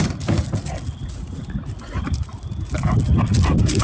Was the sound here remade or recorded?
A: recorded